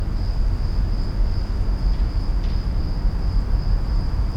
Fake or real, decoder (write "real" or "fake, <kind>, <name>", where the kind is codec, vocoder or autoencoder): real